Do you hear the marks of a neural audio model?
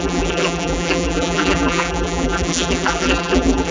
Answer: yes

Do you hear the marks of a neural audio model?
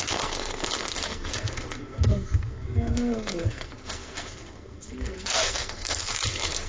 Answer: yes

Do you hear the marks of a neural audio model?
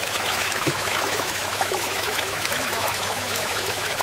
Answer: yes